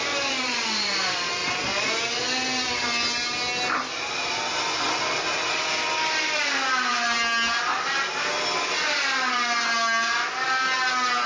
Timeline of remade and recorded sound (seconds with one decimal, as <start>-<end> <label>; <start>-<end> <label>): 0.0-11.3 recorded